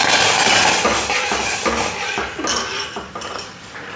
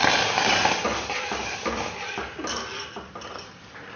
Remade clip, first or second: second